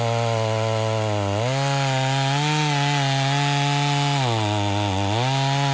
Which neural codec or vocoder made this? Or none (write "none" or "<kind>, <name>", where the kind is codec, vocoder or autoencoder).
none